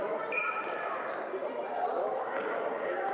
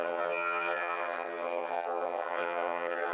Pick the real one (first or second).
first